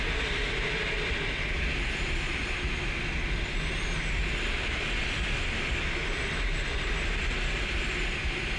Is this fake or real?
real